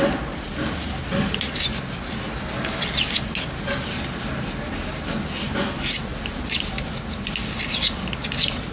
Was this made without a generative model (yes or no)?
yes